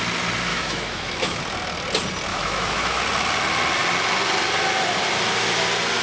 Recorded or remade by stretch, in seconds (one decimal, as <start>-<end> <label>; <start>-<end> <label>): 0.0-0.5 recorded; 0.5-1.4 remade; 1.4-2.3 recorded; 2.3-3.0 remade; 3.0-6.0 recorded